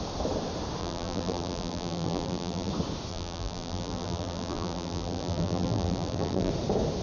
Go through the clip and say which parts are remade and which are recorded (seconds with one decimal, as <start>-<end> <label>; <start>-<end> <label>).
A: 0.0-0.8 recorded; 0.8-2.7 remade; 2.7-3.1 recorded; 3.1-6.5 remade; 6.5-7.0 recorded